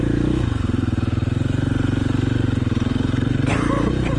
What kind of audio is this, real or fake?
fake